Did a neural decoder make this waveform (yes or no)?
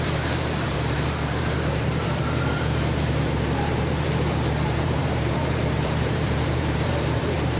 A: yes